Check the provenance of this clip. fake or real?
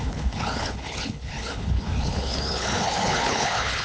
fake